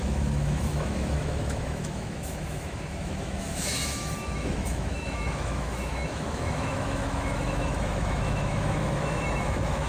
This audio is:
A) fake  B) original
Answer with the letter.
A